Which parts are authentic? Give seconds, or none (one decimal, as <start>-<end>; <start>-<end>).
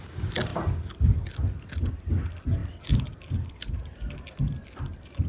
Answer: 0.0-5.3